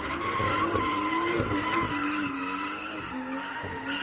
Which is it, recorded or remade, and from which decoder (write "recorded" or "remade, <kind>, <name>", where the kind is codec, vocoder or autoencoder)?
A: recorded